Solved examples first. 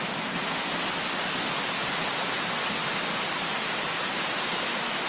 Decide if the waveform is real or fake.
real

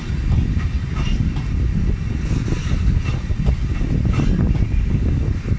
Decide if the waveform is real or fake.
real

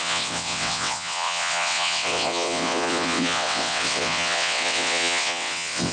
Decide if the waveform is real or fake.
fake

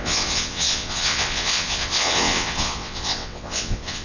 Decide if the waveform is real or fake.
fake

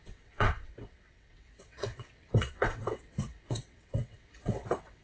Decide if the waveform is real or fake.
fake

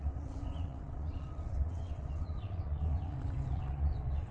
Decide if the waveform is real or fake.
fake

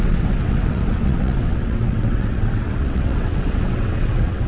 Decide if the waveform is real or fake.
fake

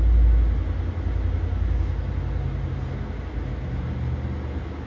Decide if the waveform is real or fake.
real